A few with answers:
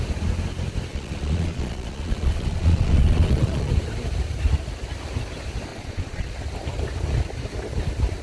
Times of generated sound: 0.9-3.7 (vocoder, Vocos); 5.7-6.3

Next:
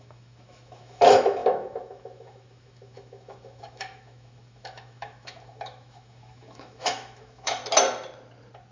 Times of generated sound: 0.0-7.6 (autoencoder, DAC-VAE)

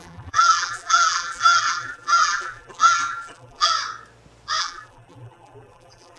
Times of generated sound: 0.0-3.7 (vocoder, BigVGAN v2); 4.6-6.2

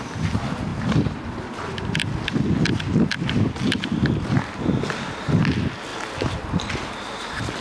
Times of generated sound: none

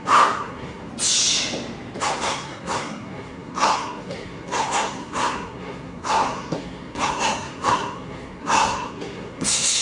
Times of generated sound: 0.0-0.9 (codec, SNAC); 2.0-9.8

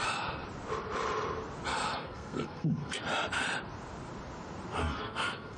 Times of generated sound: 1.7-3.0 (codec, SNAC); 4.8-5.6